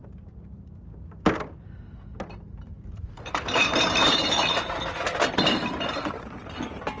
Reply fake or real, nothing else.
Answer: real